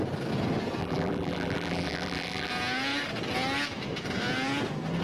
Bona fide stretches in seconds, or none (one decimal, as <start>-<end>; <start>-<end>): 0.0-0.8; 2.5-5.0